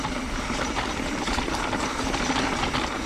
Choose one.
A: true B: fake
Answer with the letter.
B